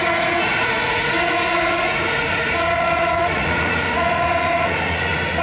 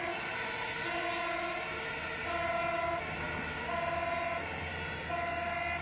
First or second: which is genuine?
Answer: second